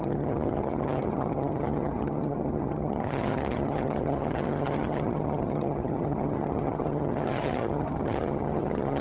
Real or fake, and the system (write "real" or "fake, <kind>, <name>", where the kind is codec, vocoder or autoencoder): fake, vocoder, HiFi-GAN